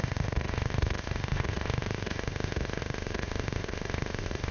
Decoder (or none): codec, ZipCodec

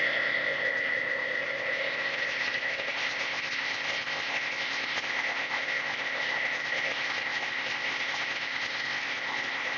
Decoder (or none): codec, ZipCodec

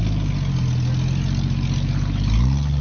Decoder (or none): none